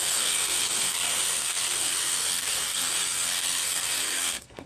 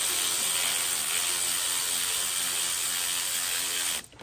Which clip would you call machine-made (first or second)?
first